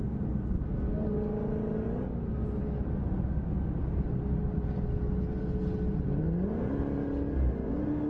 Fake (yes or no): no